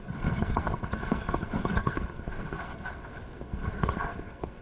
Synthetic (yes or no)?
yes